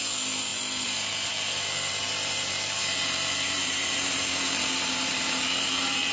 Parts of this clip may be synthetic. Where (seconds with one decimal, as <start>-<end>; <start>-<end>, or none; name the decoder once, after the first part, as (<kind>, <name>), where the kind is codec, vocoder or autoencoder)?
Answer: 0.0-6.1 (vocoder, BigVGAN v2)